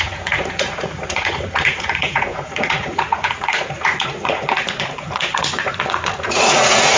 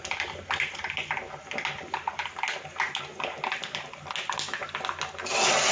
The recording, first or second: second